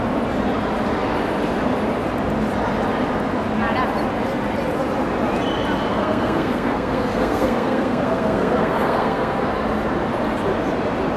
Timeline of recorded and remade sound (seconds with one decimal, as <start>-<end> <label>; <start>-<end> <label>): 0.0-5.9 recorded; 5.9-9.4 remade; 9.4-11.2 recorded

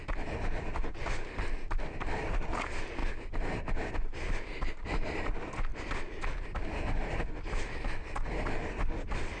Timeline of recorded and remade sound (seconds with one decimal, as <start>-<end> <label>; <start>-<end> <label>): 0.0-9.4 recorded